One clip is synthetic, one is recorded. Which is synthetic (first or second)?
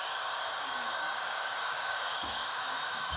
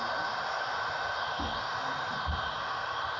first